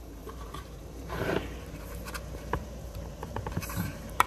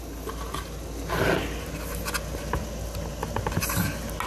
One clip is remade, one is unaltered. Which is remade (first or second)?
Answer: first